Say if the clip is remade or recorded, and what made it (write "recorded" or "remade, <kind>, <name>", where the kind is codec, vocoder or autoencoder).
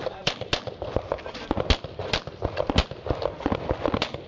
recorded